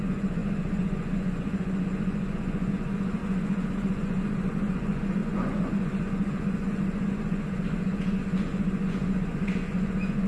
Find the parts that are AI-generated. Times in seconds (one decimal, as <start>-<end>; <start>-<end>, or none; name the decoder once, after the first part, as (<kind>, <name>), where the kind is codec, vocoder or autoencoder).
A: 0.0-10.3 (vocoder, Vocos)